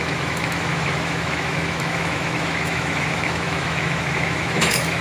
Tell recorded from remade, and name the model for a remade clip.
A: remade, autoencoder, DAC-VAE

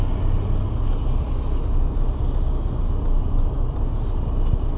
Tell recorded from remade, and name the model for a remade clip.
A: recorded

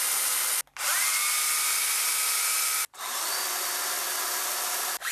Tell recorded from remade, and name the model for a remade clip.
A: recorded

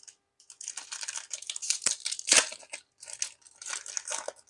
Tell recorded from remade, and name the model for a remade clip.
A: recorded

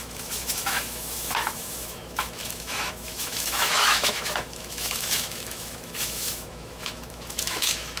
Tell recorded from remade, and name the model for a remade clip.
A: remade, autoencoder, DAC-VAE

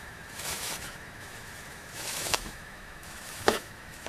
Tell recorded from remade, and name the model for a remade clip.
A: remade, autoencoder, DAC-VAE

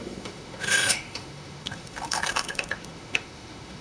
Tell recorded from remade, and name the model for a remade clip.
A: remade, autoencoder, DAC-VAE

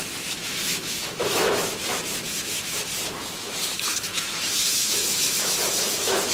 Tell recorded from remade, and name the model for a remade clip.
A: remade, autoencoder, DAC-VAE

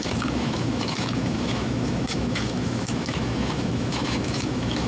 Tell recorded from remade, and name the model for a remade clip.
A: remade, autoencoder, DAC-VAE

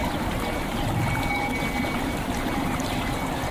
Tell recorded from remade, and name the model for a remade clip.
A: recorded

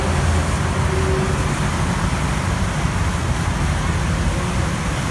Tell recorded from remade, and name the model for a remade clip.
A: recorded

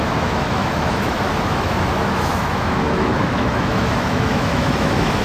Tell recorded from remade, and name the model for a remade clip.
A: remade, autoencoder, DAC-VAE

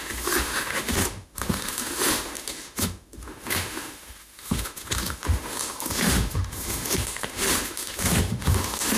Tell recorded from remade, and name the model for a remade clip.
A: remade, autoencoder, DAC-VAE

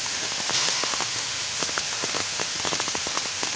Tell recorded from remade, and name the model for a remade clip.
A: remade, autoencoder, DAC-VAE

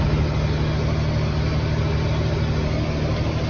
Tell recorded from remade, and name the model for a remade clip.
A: recorded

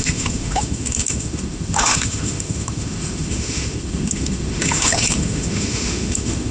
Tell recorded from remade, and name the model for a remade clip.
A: remade, autoencoder, DAC-VAE